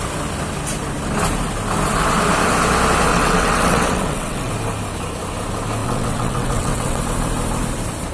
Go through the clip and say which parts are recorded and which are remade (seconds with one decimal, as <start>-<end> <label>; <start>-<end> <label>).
0.0-3.1 recorded; 3.1-4.5 remade; 4.5-5.8 recorded; 5.8-7.0 remade; 7.0-8.1 recorded